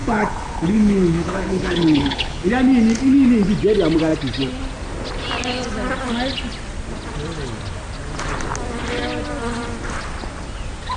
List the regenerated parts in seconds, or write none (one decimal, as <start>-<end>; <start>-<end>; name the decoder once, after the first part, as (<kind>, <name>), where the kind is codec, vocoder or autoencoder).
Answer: 0.0-2.5 (codec, HILCodec)